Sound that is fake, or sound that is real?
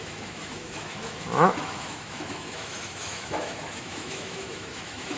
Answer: fake